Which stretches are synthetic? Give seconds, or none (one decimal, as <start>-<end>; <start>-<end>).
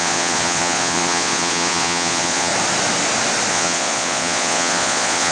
0.0-2.5; 3.5-5.3